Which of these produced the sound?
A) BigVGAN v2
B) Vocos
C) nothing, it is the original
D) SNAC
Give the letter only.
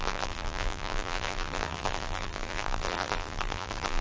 A